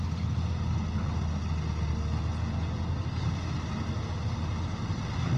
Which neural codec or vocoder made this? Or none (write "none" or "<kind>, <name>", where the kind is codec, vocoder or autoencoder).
none